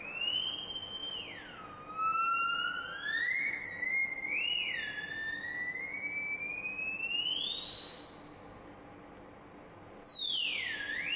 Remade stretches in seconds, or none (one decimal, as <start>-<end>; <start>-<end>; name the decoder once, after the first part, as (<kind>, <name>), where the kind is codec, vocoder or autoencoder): none

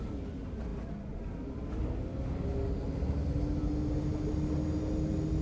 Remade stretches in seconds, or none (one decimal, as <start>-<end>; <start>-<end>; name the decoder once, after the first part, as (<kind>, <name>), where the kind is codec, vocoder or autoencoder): none